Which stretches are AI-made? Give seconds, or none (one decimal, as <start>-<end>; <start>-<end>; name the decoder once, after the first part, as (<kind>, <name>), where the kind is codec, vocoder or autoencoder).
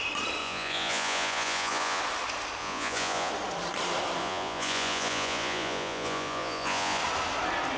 0.4-2.0 (vocoder, Vocos); 2.6-3.3; 4.2-7.0